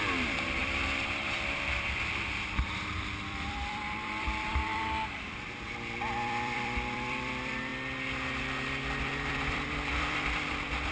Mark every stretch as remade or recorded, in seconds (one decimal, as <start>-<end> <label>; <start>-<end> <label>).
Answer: 0.0-7.7 remade; 7.7-9.0 recorded; 9.0-10.9 remade